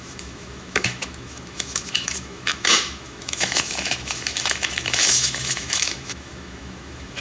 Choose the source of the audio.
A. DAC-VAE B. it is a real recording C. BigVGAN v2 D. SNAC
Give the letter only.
A